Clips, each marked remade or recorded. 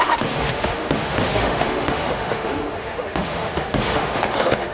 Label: remade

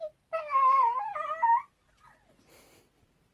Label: recorded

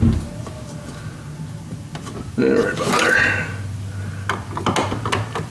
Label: recorded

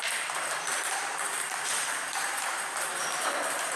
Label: remade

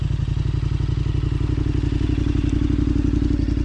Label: recorded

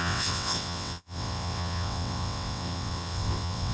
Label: remade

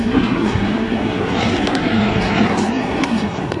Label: remade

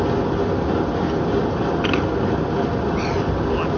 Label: recorded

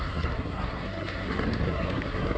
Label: remade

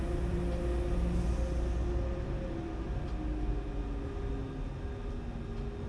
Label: recorded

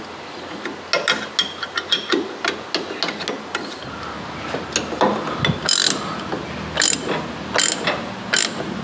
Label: recorded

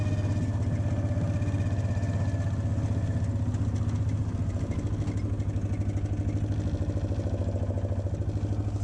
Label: recorded